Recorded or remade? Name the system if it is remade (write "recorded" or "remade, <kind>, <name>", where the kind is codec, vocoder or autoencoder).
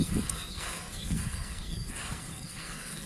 remade, codec, SNAC